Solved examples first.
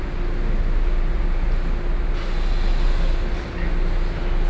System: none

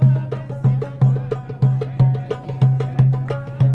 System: none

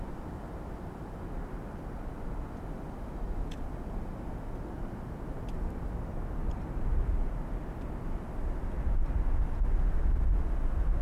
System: none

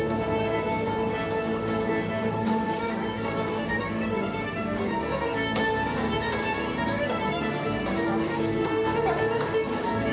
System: codec, DAC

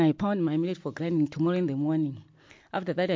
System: none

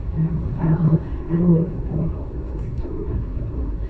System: codec, SNAC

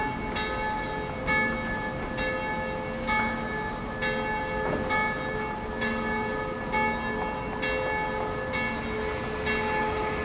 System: none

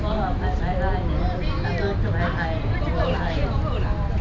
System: none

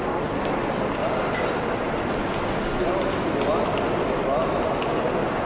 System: none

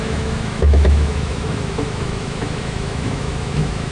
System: autoencoder, DAC-VAE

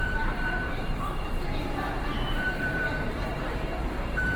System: vocoder, BigVGAN v2